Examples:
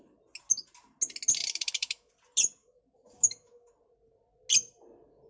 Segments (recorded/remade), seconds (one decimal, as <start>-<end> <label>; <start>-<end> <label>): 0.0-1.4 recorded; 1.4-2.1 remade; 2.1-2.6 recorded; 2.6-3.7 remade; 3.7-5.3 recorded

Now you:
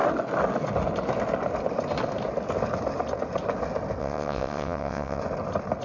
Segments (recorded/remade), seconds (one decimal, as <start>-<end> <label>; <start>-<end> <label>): 0.0-4.0 recorded; 4.0-5.2 remade; 5.2-5.8 recorded

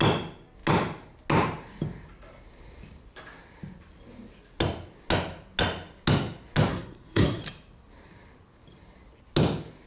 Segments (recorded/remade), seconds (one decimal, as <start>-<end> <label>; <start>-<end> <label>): 0.0-6.7 recorded; 6.7-7.4 remade; 7.4-9.9 recorded

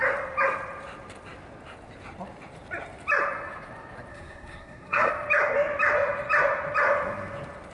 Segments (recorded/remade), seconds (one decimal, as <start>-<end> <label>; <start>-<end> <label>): 0.0-4.1 recorded; 4.1-5.1 remade; 5.1-7.7 recorded

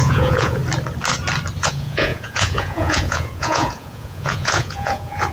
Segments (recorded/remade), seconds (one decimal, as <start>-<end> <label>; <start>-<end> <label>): 0.0-0.6 remade; 0.6-1.6 recorded; 1.6-5.3 remade

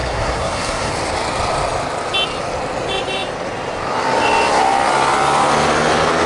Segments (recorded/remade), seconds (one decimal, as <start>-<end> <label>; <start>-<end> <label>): 0.0-0.9 remade; 0.9-6.3 recorded